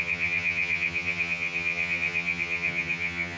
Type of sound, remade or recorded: remade